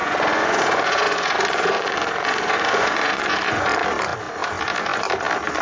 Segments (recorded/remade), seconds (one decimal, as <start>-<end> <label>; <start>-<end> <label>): 0.0-3.7 remade; 3.7-5.6 recorded